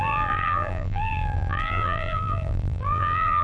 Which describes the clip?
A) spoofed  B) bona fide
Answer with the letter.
A